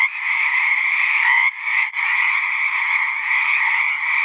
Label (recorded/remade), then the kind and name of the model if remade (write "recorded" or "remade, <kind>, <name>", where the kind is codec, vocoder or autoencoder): remade, vocoder, Vocos